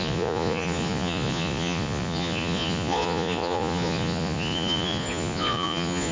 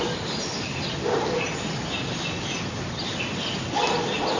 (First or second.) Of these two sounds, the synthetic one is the first